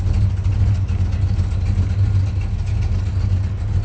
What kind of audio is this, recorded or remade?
recorded